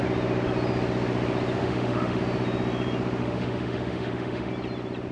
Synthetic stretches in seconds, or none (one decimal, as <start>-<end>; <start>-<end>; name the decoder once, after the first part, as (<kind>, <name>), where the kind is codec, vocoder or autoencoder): 1.6-2.2 (autoencoder, DAC-VAE); 3.2-4.5